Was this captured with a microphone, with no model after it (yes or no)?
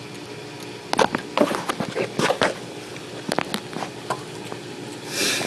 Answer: yes